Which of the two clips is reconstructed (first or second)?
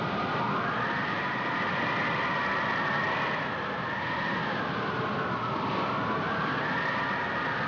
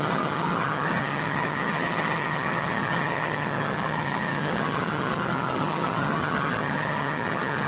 second